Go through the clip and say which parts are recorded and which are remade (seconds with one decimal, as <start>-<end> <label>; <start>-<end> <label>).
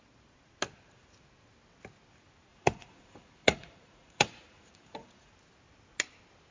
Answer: 0.0-2.5 recorded; 2.5-5.3 remade; 5.3-6.5 recorded